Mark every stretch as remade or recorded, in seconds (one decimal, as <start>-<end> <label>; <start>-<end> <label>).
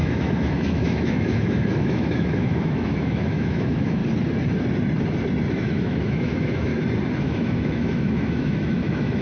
0.0-4.0 remade; 4.0-5.5 recorded; 5.5-6.7 remade; 6.7-7.2 recorded; 7.2-9.2 remade